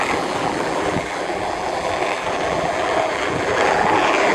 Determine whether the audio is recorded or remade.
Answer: remade